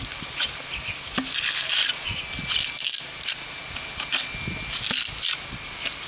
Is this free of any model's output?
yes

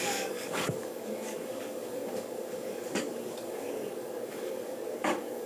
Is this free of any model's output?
no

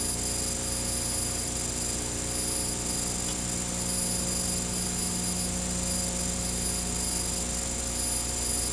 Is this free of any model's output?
yes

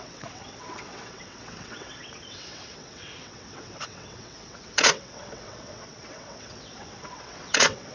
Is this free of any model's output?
no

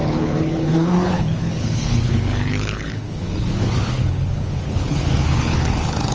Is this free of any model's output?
no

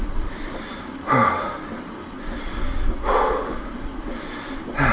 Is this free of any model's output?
yes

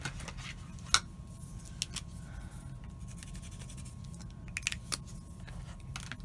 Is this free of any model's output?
yes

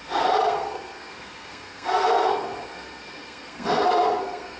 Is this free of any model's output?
no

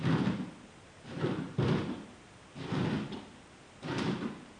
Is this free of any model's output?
yes